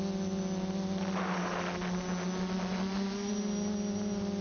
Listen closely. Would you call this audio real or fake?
real